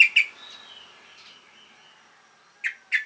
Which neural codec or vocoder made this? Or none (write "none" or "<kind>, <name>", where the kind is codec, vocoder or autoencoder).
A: none